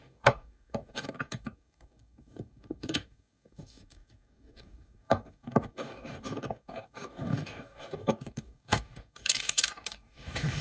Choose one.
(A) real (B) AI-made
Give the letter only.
B